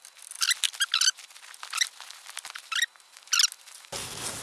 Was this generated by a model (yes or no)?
no